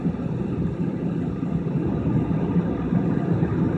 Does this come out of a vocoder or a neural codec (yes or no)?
no